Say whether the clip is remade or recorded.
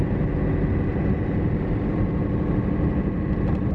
recorded